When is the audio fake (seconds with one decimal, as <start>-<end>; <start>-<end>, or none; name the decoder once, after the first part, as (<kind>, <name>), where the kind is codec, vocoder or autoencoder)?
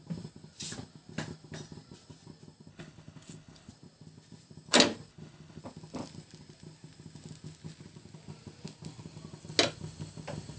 2.7-3.7 (codec, HILCodec); 5.1-5.6